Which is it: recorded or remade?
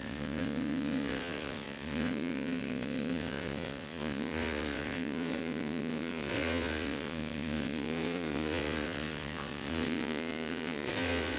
remade